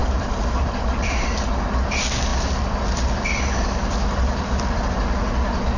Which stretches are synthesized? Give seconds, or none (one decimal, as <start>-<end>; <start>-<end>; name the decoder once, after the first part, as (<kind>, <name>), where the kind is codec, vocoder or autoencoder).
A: 0.0-1.4 (vocoder, BigVGAN v2); 2.3-5.0